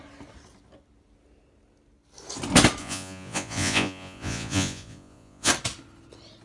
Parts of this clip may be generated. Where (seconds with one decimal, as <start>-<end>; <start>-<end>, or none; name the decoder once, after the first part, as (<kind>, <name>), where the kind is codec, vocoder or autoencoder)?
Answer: 2.8-5.5 (vocoder, Vocos)